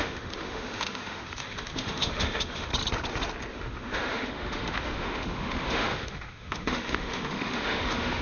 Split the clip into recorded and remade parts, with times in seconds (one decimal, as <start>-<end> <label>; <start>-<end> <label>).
0.0-2.7 remade; 2.7-3.5 recorded; 3.5-8.2 remade